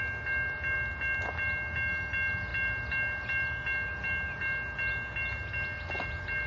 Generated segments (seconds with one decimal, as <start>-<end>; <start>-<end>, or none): none